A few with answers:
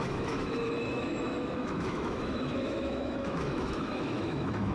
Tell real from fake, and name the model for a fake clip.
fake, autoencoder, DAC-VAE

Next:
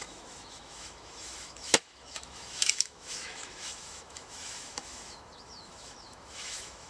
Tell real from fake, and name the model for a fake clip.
fake, autoencoder, DAC-VAE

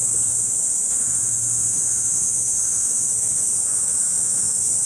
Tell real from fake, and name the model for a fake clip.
fake, autoencoder, DAC-VAE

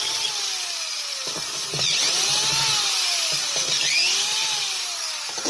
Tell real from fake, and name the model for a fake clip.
real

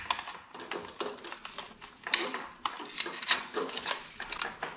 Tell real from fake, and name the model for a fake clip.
real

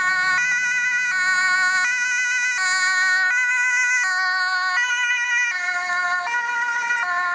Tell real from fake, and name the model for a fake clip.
real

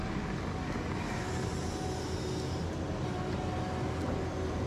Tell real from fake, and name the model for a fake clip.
real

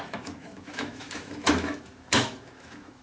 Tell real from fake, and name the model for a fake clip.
fake, autoencoder, DAC-VAE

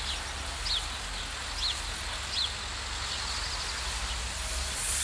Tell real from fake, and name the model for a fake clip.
real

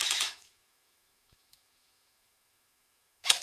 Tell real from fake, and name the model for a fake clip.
fake, autoencoder, DAC-VAE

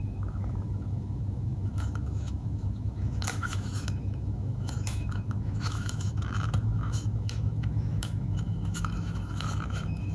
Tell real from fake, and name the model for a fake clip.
fake, autoencoder, DAC-VAE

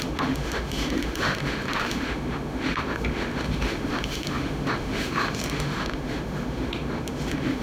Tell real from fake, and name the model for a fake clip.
fake, autoencoder, DAC-VAE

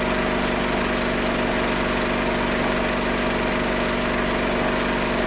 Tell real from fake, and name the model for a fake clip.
real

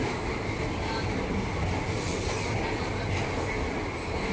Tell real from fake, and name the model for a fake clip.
real